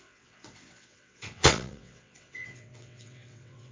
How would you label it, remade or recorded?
remade